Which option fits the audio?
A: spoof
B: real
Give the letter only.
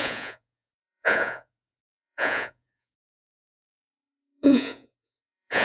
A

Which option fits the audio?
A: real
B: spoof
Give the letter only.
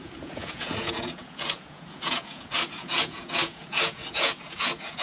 B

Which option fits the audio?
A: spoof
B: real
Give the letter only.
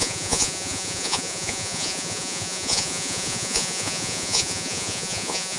A